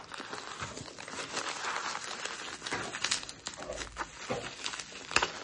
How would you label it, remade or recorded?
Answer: recorded